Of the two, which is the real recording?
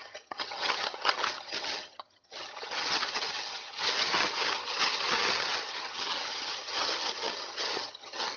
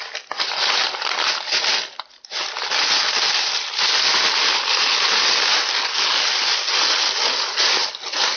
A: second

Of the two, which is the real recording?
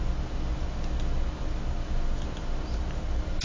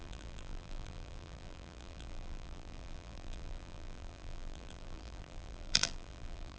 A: first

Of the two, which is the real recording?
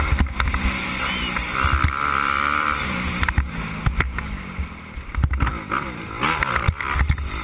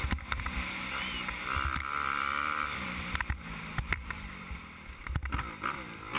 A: first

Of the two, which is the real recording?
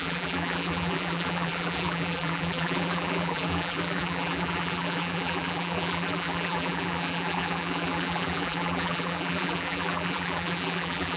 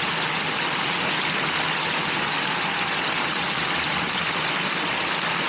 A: second